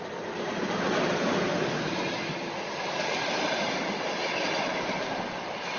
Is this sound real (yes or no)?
yes